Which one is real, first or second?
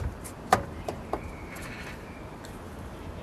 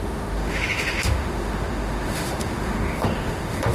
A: first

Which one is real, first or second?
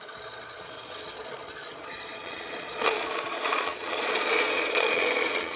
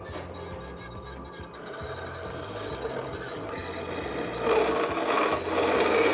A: second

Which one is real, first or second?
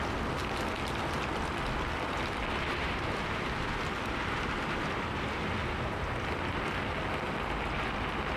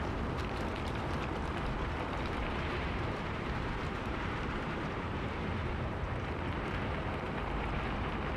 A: first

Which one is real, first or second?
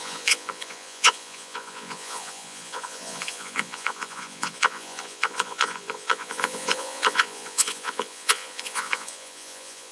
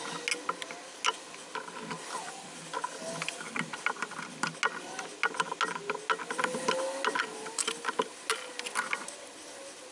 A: second